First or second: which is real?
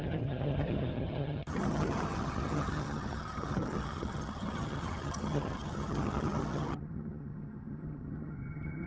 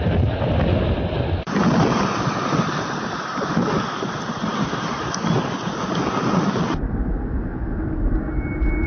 second